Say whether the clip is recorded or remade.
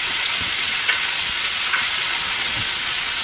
remade